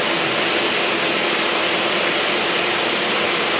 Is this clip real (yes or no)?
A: yes